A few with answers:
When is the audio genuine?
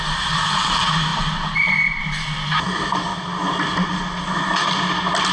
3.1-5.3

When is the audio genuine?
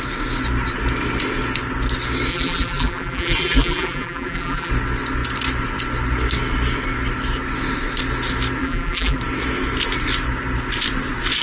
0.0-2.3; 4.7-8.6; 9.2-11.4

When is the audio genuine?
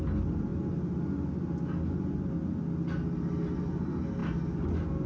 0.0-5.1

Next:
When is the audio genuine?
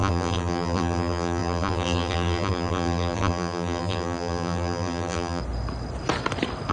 5.4-6.7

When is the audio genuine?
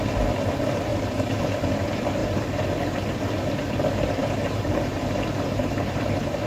0.0-0.9; 1.5-4.2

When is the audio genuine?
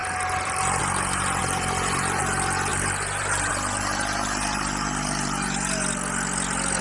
0.8-1.4; 2.2-2.7; 3.5-6.8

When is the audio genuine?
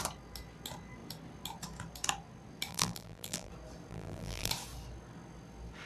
0.0-2.7; 3.5-3.9; 4.5-5.9